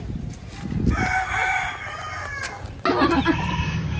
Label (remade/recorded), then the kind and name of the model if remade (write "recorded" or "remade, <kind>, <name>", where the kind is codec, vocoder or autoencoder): recorded